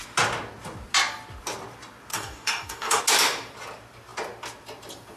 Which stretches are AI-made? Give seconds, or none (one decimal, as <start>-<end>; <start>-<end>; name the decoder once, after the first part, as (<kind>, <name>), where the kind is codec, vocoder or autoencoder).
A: 2.1-3.0 (codec, DAC)